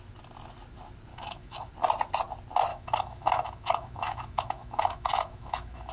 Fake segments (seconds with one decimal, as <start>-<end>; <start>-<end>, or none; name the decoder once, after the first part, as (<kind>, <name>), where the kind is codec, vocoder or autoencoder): 1.1-1.7 (autoencoder, DAC-VAE); 2.7-5.9